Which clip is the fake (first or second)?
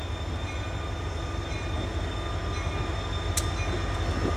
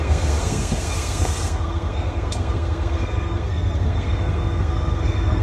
second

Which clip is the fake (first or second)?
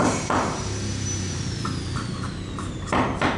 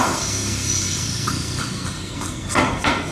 second